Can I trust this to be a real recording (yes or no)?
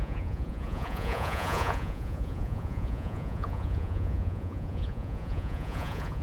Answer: no